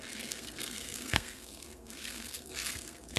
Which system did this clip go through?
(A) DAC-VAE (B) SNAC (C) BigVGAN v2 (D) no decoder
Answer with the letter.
B